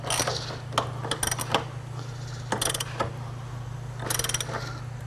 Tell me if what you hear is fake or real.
real